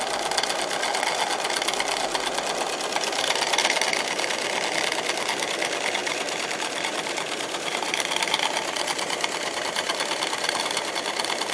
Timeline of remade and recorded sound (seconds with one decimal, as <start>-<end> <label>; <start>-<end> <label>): 0.0-6.0 recorded; 6.0-11.0 remade; 11.0-11.5 recorded